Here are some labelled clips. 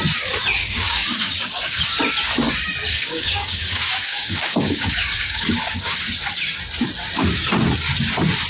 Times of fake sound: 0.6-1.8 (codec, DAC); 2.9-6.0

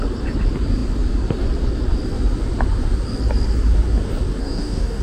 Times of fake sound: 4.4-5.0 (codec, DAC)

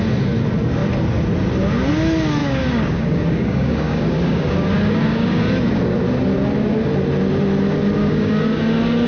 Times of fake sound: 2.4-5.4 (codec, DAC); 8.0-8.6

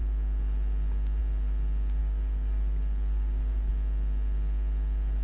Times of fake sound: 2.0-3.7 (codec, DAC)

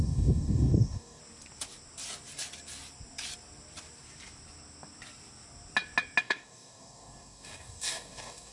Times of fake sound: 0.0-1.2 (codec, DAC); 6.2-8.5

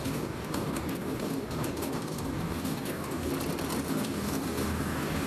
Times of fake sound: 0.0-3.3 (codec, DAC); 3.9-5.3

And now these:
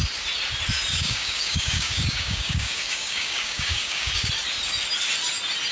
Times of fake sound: 0.9-4.3 (codec, DAC)